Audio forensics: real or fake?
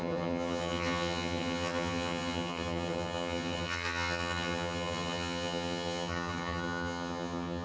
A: fake